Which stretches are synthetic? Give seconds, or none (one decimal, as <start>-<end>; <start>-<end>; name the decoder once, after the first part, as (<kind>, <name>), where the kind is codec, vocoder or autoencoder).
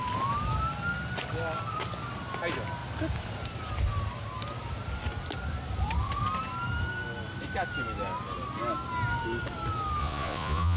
10.0-10.8 (vocoder, Vocos)